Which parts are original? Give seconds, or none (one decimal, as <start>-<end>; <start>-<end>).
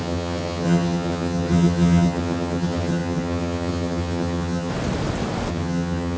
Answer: 4.7-5.5